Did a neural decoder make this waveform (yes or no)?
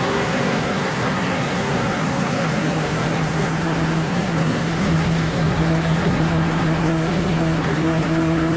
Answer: yes